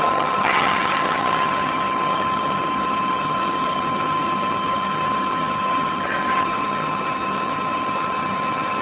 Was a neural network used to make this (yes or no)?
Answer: yes